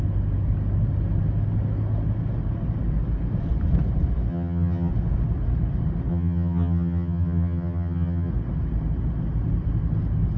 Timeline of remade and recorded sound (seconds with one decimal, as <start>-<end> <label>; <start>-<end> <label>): 0.0-4.3 recorded; 4.3-4.9 remade; 4.9-6.1 recorded; 6.1-8.3 remade; 8.3-10.4 recorded